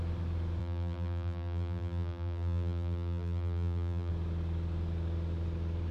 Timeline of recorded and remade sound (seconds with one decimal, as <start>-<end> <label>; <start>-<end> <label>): 0.0-0.6 recorded; 0.6-4.1 remade; 4.1-5.9 recorded